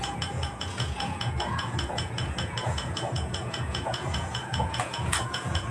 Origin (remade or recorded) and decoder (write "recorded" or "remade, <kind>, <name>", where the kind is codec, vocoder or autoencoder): remade, vocoder, Vocos